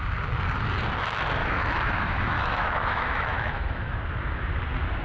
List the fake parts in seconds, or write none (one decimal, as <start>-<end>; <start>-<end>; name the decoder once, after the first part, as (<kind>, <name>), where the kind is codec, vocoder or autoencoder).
1.4-4.0 (autoencoder, DAC-VAE)